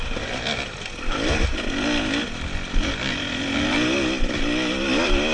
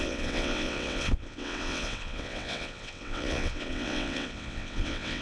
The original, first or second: first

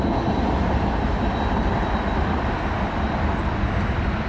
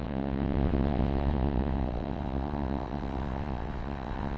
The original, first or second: first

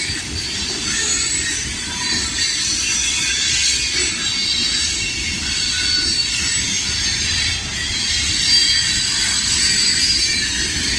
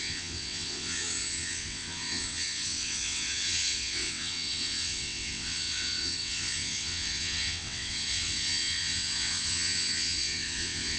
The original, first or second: first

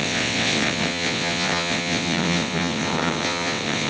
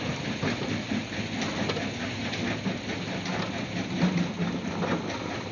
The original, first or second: second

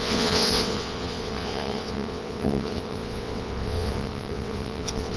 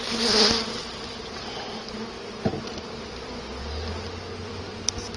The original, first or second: second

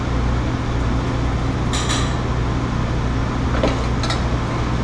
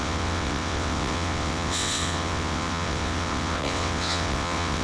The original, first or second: first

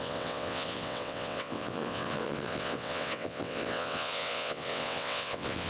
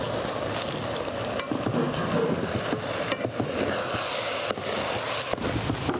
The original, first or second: second